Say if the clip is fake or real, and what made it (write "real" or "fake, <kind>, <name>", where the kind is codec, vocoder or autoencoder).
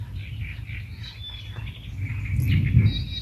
real